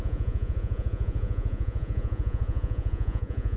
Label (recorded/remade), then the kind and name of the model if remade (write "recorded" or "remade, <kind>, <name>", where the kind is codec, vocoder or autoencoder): remade, vocoder, Vocos